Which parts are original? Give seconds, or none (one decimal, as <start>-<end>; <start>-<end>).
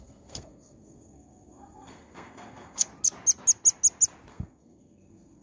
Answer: 2.9-4.3